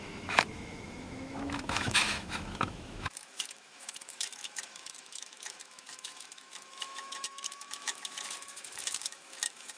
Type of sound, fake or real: fake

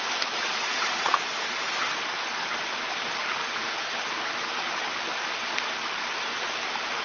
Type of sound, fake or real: real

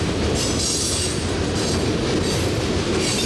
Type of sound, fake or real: real